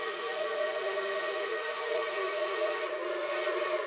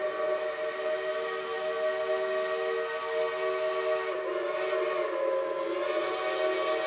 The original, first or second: second